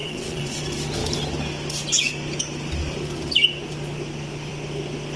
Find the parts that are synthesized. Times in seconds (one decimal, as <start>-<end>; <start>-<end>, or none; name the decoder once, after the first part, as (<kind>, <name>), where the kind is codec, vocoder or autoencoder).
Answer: 0.0-0.6 (vocoder, WaveNeXt)